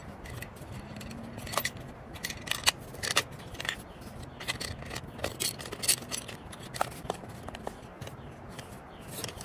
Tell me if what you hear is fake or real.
real